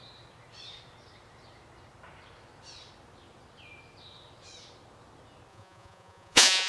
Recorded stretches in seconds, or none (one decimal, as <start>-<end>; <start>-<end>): 0.0-5.5